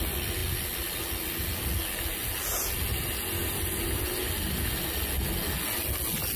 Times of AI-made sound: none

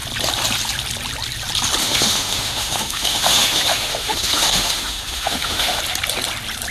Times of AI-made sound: 1.8-5.8

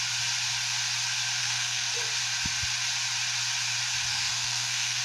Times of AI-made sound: 1.4-1.9; 4.1-5.0

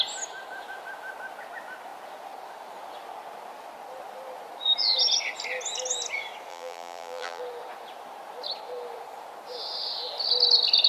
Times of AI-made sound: 6.5-7.4